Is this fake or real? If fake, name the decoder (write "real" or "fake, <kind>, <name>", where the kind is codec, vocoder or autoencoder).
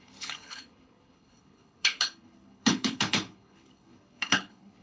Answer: fake, codec, HILCodec